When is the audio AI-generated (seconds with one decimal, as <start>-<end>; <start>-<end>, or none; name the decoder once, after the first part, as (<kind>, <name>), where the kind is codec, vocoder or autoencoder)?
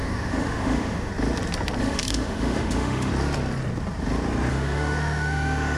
0.0-1.1 (autoencoder, DAC-VAE); 1.8-3.1; 4.5-5.8